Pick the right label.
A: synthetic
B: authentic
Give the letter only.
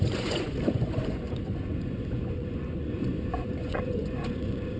A